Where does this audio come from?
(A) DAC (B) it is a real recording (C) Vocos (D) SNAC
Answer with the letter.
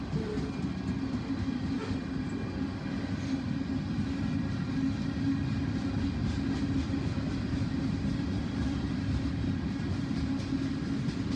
B